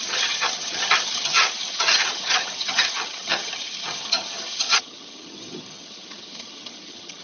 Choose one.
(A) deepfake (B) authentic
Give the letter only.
A